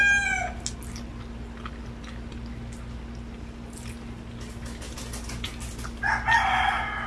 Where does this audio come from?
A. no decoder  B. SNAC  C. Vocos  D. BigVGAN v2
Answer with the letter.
A